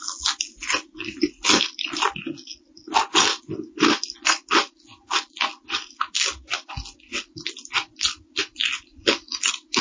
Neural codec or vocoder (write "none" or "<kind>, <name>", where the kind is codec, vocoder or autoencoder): none